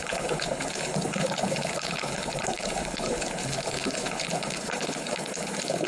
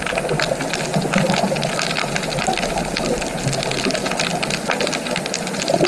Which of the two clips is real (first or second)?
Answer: second